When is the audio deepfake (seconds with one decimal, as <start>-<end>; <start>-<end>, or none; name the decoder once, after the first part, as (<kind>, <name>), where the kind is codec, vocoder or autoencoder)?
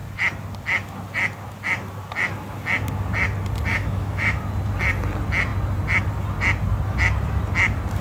3.7-4.4 (autoencoder, DAC-VAE)